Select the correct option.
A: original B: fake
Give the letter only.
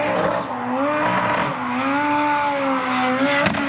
A